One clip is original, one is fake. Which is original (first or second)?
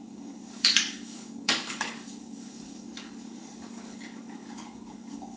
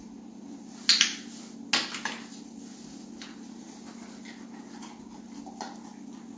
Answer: second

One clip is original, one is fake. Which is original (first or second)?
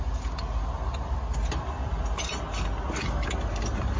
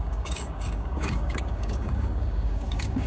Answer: first